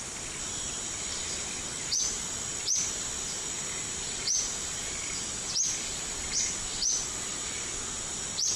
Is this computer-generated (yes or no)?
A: no